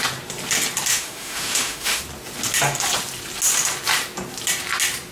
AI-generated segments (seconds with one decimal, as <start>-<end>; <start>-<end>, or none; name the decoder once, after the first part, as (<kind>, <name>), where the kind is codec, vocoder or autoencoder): 0.9-2.0 (autoencoder, DAC-VAE)